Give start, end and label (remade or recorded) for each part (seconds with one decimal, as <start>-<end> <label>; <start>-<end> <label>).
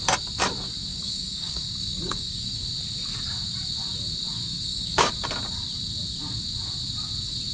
0.0-0.9 recorded; 0.9-2.6 remade; 2.6-4.5 recorded; 4.5-5.1 remade; 5.1-7.5 recorded